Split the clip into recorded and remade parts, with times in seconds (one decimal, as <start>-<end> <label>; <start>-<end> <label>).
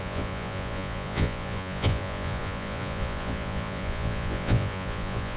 0.0-5.4 remade